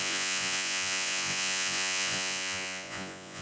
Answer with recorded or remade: remade